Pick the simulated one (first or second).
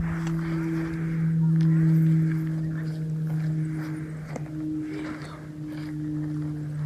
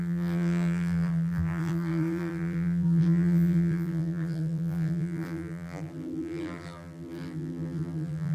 second